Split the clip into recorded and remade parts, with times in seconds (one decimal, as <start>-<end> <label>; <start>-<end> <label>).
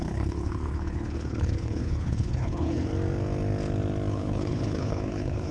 0.0-2.9 remade; 2.9-4.1 recorded; 4.1-5.5 remade